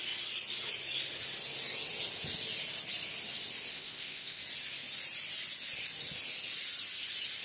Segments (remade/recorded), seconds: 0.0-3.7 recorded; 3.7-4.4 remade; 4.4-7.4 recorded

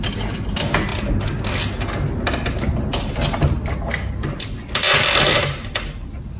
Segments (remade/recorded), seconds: 0.0-6.4 recorded

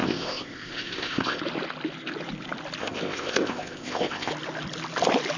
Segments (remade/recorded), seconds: 0.0-1.4 remade; 1.4-2.8 recorded; 2.8-4.3 remade; 4.3-5.4 recorded